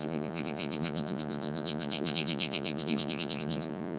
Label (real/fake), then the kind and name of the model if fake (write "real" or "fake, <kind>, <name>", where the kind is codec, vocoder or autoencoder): fake, vocoder, Vocos